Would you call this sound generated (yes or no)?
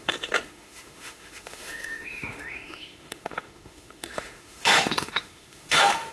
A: yes